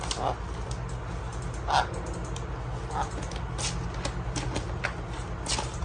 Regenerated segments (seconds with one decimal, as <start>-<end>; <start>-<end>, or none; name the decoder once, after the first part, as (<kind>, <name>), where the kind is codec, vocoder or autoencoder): none